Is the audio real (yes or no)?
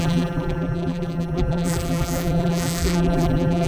no